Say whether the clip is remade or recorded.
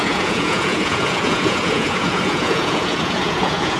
remade